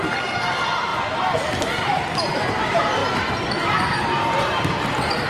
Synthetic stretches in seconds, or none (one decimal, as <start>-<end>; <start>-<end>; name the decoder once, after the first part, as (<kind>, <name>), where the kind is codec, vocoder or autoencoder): 0.0-0.9 (vocoder, BigVGAN v2); 2.6-3.0; 4.4-5.3